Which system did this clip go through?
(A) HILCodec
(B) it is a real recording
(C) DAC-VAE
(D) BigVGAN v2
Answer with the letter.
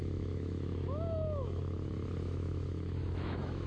C